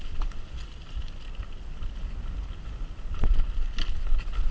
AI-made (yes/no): no